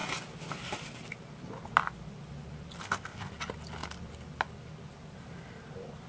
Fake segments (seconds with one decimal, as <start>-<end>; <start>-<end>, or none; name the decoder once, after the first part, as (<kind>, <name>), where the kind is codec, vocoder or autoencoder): 2.8-3.3 (codec, ZipCodec)